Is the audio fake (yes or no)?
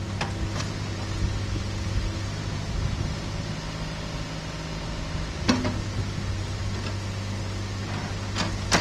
no